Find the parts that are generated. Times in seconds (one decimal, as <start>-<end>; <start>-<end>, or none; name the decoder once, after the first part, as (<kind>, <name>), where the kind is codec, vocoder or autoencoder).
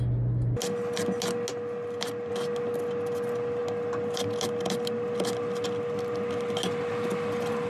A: none